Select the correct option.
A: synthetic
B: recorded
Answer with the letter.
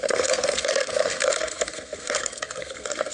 A